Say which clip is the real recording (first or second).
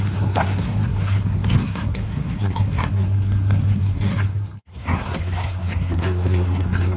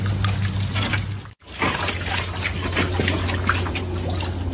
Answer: second